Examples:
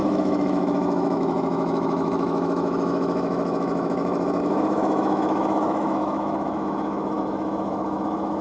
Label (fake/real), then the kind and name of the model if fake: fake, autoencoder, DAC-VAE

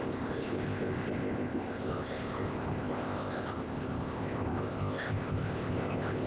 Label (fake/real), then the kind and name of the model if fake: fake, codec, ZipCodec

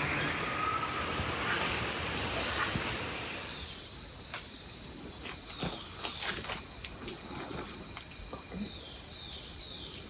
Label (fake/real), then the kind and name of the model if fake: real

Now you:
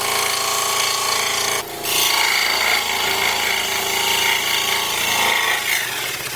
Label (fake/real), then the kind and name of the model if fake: real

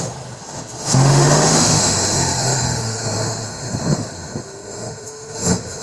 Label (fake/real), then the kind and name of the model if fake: fake, autoencoder, DAC-VAE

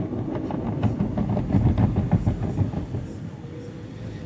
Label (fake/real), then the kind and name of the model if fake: real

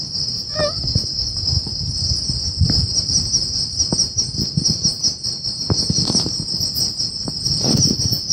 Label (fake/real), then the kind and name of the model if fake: real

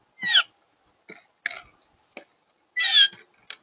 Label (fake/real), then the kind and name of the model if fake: real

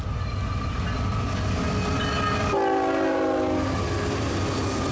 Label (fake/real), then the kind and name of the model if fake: real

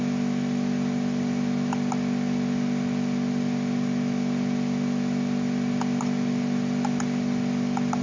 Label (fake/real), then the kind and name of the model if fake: real